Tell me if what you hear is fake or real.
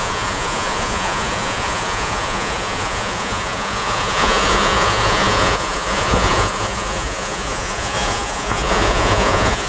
fake